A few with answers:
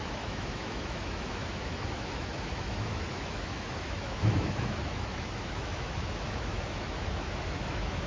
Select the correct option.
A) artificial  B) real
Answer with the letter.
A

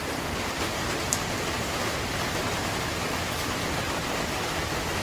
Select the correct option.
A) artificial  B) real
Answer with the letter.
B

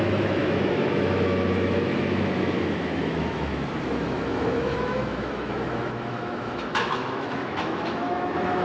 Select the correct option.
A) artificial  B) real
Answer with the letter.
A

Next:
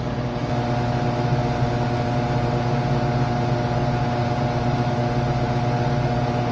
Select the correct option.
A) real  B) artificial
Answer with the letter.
A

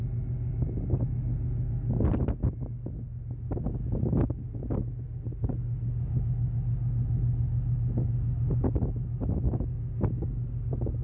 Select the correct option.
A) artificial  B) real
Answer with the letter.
B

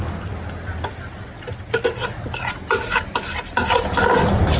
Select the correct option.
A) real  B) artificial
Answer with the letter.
A